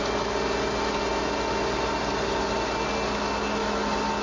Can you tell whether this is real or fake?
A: real